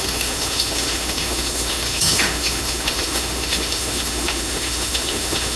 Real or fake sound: fake